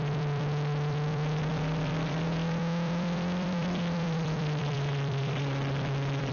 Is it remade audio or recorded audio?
remade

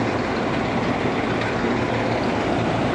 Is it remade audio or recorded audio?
recorded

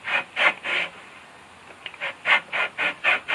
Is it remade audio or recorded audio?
recorded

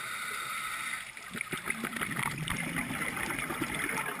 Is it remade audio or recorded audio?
remade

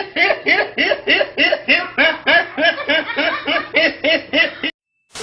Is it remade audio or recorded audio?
recorded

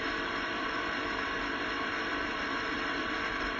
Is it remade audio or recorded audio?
remade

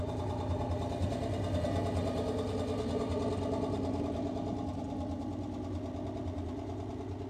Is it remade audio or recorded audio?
recorded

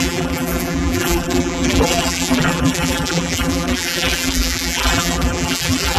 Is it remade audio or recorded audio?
remade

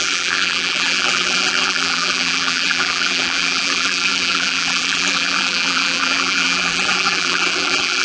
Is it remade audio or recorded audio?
remade